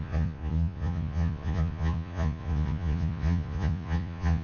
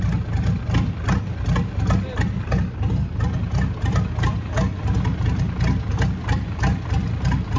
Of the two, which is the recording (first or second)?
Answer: second